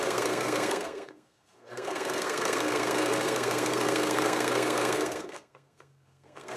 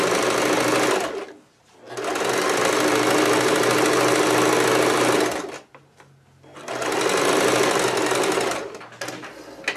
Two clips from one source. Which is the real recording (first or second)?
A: second